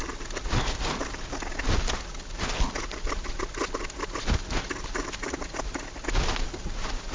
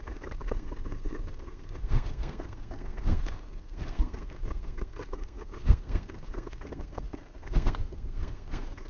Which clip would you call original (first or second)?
first